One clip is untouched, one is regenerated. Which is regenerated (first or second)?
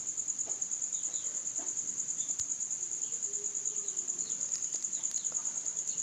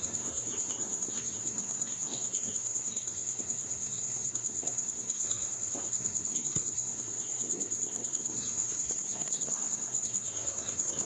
second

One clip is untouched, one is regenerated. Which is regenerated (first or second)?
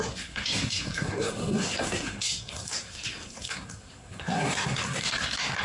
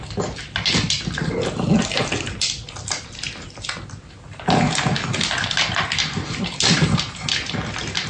first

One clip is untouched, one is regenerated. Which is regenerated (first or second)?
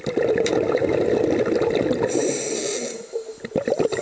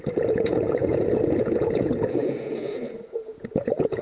second